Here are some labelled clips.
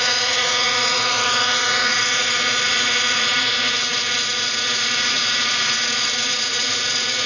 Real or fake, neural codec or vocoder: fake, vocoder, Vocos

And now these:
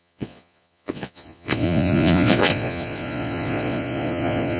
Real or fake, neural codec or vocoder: fake, vocoder, Vocos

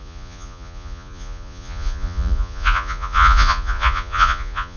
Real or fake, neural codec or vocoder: fake, vocoder, Vocos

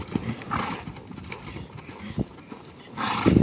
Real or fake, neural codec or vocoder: real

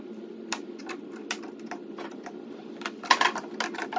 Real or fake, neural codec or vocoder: real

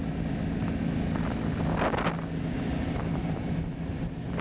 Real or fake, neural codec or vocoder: real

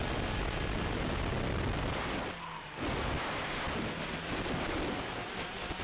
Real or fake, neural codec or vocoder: real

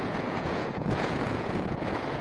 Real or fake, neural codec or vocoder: fake, vocoder, Vocos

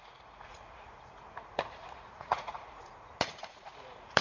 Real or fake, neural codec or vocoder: fake, vocoder, Vocos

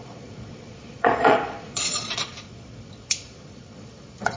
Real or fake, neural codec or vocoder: fake, vocoder, Vocos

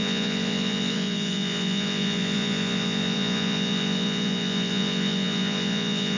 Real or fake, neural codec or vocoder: fake, vocoder, Vocos